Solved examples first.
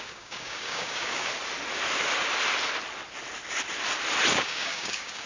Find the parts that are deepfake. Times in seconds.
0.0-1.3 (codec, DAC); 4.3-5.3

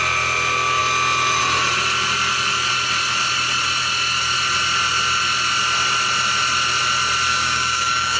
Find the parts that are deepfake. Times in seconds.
7.3-8.2 (codec, DAC)

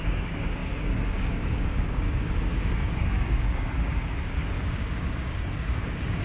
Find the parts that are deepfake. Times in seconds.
0.0-6.2 (codec, DAC)

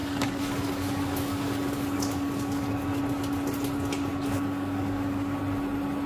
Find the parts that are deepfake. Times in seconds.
0.0-3.0 (codec, DAC); 4.1-5.4

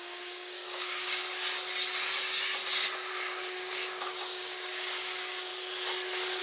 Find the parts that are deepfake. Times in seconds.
0.0-1.2 (codec, DAC); 3.1-5.5